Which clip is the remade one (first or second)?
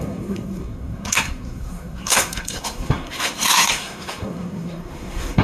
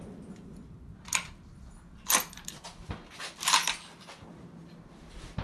first